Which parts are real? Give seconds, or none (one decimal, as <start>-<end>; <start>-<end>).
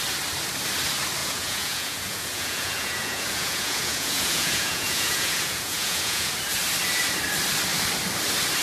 0.0-1.2; 6.3-8.6